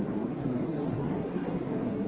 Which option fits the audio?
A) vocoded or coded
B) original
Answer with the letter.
A